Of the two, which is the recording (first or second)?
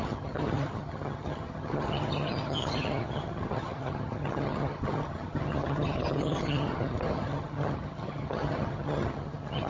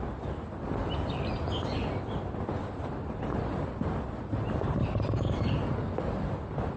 second